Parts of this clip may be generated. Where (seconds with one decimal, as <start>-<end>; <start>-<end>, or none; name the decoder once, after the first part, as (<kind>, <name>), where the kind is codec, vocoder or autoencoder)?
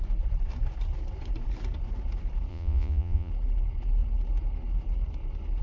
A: 2.5-3.3 (vocoder, Vocos)